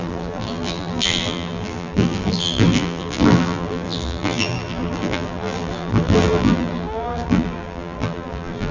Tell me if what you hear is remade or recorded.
remade